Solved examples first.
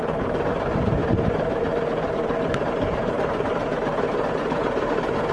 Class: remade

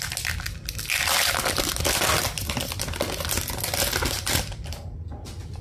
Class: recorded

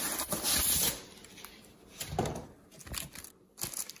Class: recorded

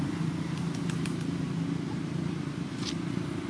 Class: remade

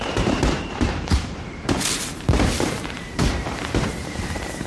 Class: remade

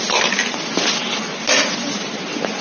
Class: recorded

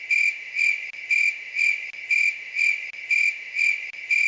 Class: recorded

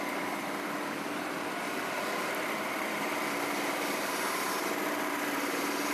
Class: remade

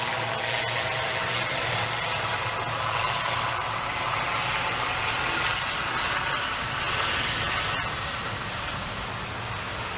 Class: recorded